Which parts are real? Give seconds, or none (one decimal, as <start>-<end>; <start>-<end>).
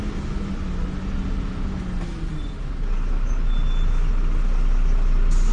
0.0-5.5